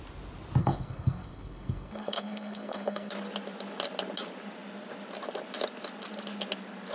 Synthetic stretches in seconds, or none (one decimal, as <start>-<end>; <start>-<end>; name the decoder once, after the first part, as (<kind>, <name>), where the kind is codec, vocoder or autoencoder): 0.6-3.1 (codec, SNAC)